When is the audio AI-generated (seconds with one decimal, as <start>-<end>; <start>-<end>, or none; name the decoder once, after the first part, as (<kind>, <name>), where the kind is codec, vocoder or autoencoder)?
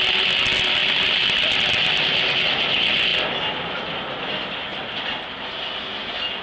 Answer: 0.8-1.6 (vocoder, BigVGAN v2)